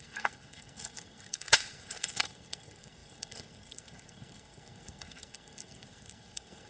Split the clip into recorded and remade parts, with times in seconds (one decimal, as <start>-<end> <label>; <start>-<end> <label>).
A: 0.0-6.7 remade